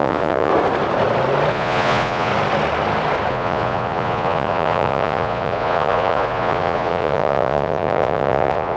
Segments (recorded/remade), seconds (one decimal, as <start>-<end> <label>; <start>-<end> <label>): 0.0-0.5 remade; 0.5-1.5 recorded; 1.5-2.3 remade; 2.3-3.3 recorded; 3.3-8.8 remade